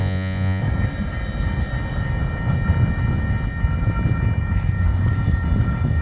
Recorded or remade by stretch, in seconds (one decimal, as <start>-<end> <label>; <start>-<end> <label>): 0.0-0.6 remade; 0.6-6.0 recorded